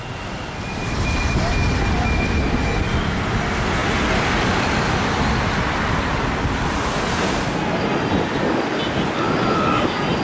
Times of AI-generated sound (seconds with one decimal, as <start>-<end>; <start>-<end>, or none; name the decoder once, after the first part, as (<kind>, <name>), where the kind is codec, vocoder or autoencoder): none